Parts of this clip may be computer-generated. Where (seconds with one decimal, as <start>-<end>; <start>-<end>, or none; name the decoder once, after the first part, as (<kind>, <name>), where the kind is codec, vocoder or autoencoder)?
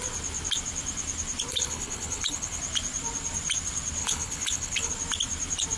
1.5-2.6 (codec, HILCodec); 4.0-4.9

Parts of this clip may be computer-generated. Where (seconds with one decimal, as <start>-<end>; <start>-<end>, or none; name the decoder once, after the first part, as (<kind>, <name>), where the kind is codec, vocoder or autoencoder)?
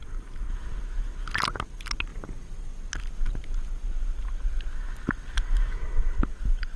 none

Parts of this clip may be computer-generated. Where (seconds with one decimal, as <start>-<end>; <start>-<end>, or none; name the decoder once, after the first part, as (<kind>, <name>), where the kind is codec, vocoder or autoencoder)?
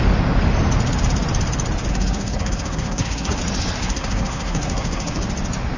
1.9-3.4 (codec, SNAC); 3.8-5.2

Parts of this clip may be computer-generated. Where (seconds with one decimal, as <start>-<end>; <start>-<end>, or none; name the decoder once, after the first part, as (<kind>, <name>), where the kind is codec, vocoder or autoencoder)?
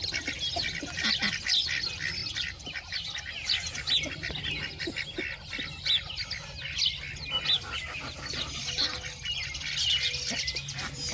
none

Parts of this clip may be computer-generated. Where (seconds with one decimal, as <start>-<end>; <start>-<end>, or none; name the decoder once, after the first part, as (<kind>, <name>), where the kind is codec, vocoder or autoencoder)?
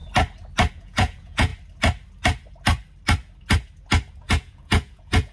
0.7-1.5 (vocoder, Vocos); 4.1-5.3